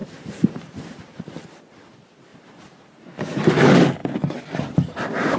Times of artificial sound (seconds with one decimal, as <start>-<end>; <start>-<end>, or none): 0.0-1.4; 2.3-3.5